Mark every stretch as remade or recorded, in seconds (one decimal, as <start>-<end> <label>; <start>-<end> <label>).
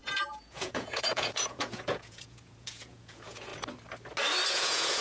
0.0-3.5 remade; 3.5-4.5 recorded; 4.5-5.0 remade